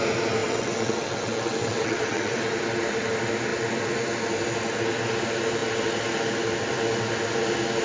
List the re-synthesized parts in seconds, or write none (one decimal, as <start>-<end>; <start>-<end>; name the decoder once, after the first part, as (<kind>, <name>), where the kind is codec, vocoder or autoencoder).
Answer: 0.4-2.4 (vocoder, WaveNeXt)